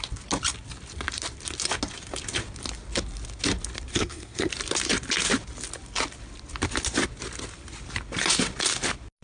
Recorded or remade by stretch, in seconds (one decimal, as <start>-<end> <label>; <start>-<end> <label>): 0.0-3.9 recorded; 3.9-4.5 remade; 4.5-9.2 recorded